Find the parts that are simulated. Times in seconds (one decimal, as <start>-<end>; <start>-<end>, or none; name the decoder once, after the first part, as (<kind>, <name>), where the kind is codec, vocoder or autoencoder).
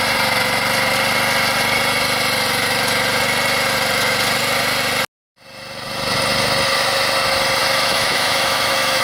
7.6-9.0 (autoencoder, DAC-VAE)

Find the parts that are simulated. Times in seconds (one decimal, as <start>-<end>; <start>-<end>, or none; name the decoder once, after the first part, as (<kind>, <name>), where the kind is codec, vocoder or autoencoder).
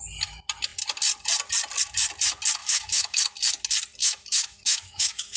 2.6-3.2 (autoencoder, DAC-VAE); 4.0-5.4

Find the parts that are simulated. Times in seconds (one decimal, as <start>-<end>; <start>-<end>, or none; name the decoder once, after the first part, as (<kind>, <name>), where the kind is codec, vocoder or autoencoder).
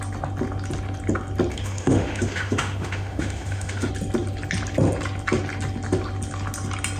1.5-3.9 (autoencoder, DAC-VAE)